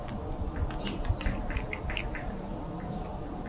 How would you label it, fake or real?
real